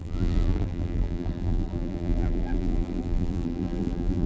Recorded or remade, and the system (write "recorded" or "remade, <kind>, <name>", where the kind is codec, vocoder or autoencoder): remade, vocoder, BigVGAN v2